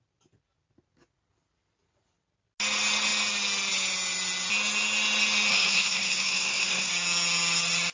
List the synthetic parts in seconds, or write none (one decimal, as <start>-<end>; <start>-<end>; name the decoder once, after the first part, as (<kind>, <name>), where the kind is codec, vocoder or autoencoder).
5.5-6.9 (codec, SNAC)